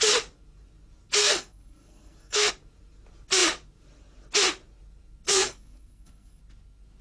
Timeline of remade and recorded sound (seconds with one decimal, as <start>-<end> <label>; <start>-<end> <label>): 0.0-1.2 recorded; 1.2-2.5 remade; 2.5-5.3 recorded; 5.3-6.4 remade; 6.4-7.0 recorded